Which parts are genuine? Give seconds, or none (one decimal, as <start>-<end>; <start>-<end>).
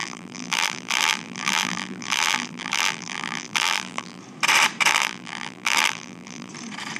4.2-4.9; 6.5-7.0